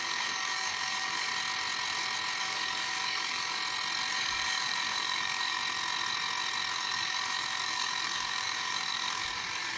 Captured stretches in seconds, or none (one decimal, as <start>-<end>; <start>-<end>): 1.3-2.4; 3.6-4.1; 5.6-6.7